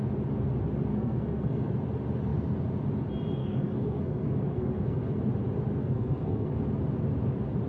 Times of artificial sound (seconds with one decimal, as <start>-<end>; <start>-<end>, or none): 0.9-1.7; 3.4-5.2; 5.8-6.6